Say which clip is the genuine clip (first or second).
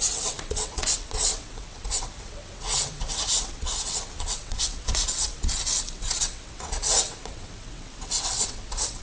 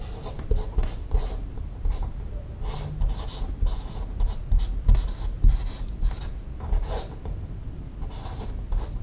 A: second